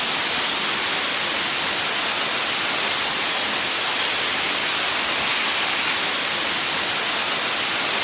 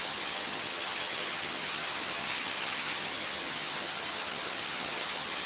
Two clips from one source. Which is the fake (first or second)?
second